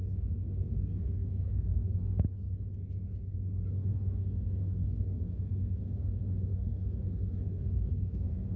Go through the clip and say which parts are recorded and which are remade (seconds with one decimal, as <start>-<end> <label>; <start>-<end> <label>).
0.0-2.0 remade; 2.0-3.9 recorded; 3.9-8.6 remade